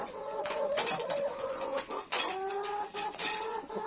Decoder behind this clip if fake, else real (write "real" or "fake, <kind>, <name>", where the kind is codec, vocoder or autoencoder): fake, vocoder, Vocos